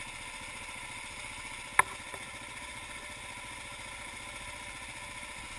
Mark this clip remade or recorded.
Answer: recorded